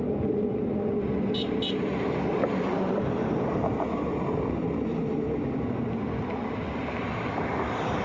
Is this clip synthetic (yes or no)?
no